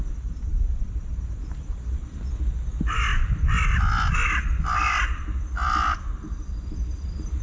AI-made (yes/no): no